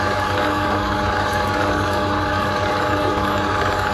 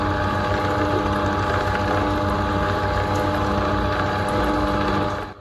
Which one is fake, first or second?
first